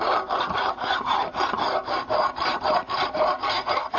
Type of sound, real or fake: fake